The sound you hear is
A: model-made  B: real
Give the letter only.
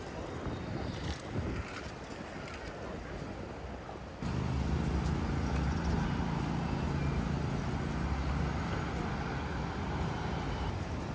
B